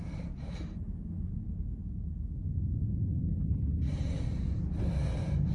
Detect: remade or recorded recorded